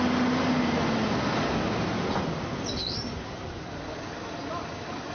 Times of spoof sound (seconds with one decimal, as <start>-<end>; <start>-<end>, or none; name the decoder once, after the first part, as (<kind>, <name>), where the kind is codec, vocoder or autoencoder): none